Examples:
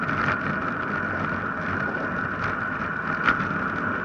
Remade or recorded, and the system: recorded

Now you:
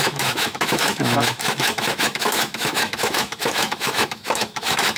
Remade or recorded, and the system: remade, autoencoder, DAC-VAE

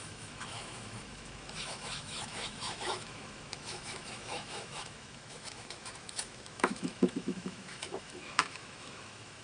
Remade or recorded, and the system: remade, autoencoder, DAC-VAE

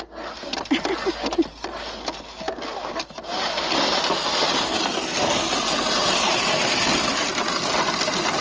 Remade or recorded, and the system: recorded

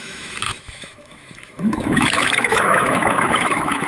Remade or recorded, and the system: remade, autoencoder, DAC-VAE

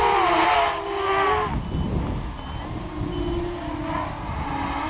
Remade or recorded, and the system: recorded